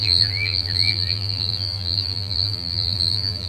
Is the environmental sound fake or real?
fake